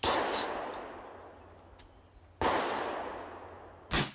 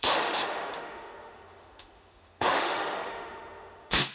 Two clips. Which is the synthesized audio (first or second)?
second